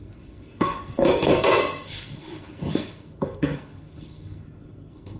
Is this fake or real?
fake